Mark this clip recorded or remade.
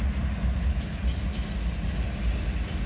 recorded